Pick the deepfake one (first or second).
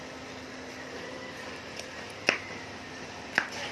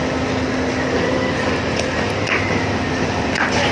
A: first